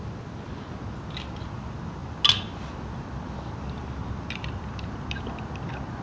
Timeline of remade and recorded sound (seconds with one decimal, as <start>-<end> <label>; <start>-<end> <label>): 0.0-6.0 recorded